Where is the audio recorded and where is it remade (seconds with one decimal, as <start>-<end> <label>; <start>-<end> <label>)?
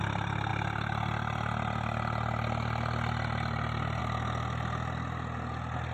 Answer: 0.0-5.9 recorded